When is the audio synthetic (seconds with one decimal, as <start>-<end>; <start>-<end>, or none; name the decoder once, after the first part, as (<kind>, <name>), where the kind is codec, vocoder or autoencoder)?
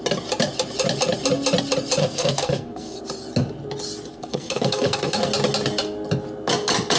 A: 2.0-3.0 (codec, SNAC); 4.1-5.3